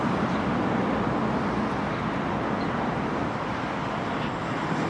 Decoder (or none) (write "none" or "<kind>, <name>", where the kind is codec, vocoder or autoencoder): none